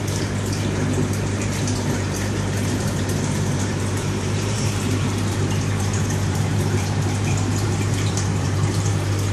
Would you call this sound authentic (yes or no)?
no